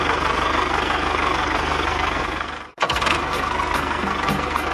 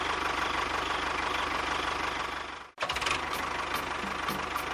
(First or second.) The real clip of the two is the second